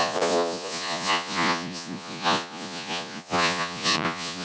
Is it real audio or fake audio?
fake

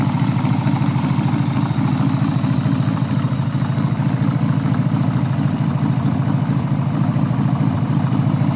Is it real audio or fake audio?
fake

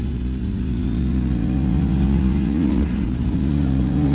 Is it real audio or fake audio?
fake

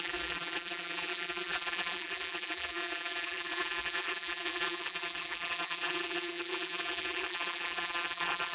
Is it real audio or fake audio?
fake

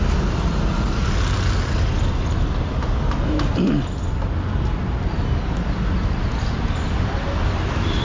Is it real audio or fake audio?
real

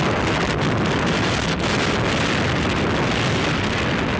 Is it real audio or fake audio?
real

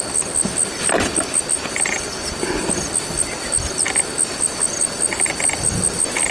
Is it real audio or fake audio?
real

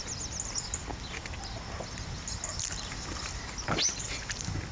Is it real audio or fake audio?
real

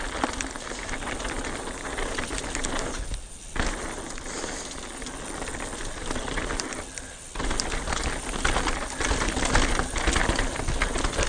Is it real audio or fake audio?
real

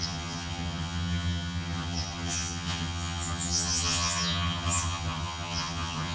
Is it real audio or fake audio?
fake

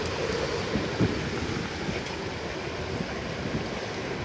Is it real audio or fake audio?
real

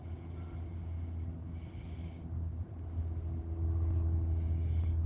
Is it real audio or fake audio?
real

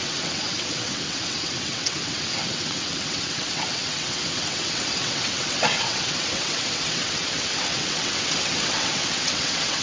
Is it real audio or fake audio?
fake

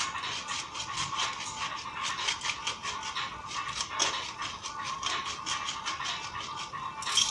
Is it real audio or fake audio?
real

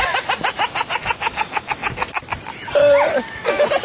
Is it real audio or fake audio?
real